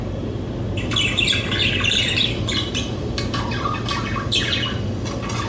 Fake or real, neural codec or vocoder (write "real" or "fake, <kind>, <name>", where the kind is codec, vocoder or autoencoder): real